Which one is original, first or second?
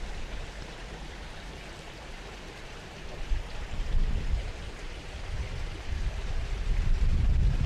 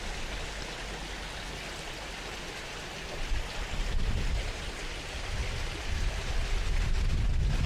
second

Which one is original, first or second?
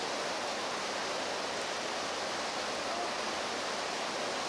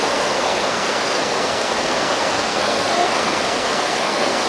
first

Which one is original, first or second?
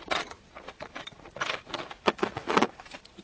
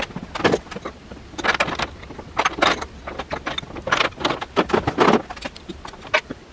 second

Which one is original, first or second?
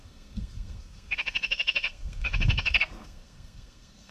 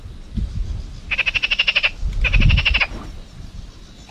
second